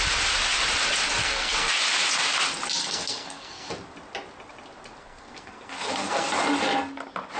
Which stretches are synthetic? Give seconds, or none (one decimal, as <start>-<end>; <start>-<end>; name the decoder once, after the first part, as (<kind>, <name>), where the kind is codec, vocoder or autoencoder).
1.2-1.7 (codec, SNAC); 2.8-3.7; 5.0-6.3